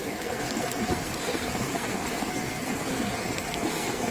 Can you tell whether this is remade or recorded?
remade